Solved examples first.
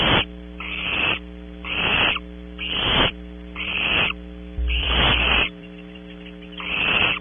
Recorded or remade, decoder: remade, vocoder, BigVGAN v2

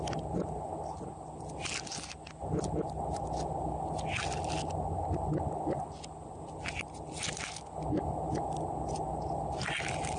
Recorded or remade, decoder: recorded